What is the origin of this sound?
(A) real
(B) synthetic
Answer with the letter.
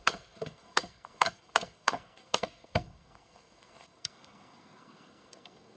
B